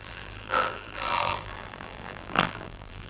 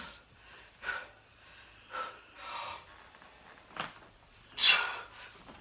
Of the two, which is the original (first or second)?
second